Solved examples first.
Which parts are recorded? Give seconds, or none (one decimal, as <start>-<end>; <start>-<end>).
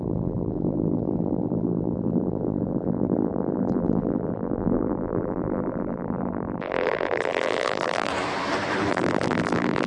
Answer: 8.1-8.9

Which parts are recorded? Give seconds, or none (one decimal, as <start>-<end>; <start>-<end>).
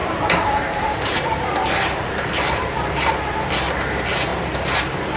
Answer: 3.1-4.3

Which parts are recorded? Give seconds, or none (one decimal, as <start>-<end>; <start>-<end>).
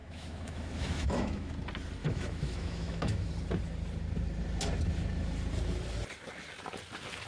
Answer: 1.5-2.0; 3.3-7.3